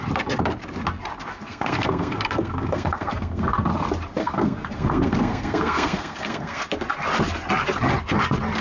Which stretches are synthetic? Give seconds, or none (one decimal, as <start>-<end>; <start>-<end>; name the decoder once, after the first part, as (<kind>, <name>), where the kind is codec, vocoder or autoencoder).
1.3-3.7 (codec, SNAC); 4.2-6.6